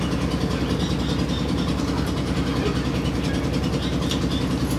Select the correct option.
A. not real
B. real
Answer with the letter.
B